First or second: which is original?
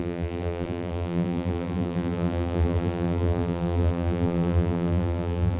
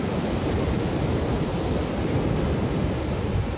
second